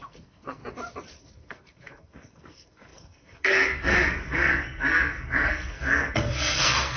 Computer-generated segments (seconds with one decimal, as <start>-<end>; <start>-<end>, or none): 0.0-0.6; 1.2-7.0